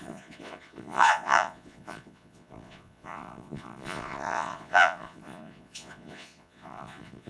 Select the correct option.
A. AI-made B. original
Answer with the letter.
A